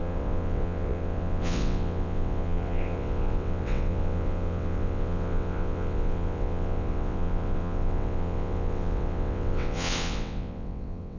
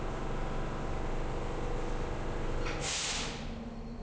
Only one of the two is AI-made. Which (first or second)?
first